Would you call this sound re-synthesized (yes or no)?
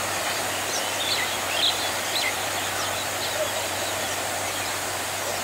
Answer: no